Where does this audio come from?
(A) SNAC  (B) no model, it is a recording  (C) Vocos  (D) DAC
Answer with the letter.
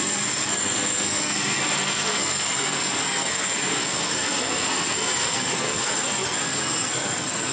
A